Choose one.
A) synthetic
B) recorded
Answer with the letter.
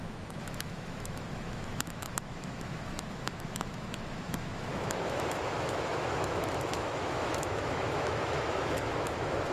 A